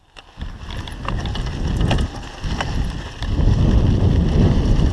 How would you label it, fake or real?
real